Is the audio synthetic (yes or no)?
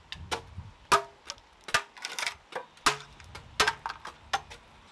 no